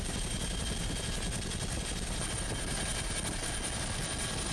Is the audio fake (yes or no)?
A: no